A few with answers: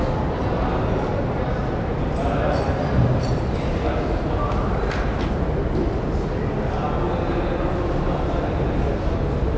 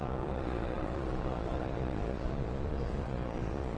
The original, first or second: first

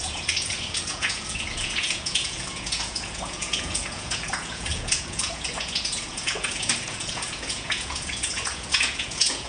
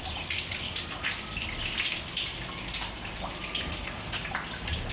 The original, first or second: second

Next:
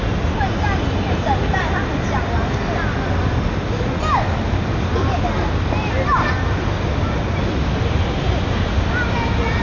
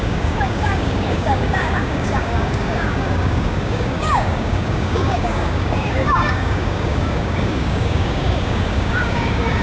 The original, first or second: first